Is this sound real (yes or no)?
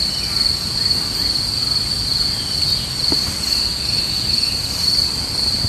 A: yes